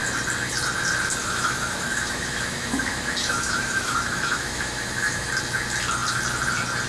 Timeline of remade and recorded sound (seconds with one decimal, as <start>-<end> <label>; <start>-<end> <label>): 0.0-1.2 recorded; 1.2-5.3 remade; 5.3-6.9 recorded